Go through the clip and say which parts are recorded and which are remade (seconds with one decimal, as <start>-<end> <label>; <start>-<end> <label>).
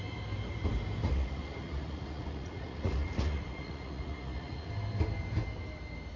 0.0-1.0 recorded; 1.0-4.7 remade; 4.7-6.2 recorded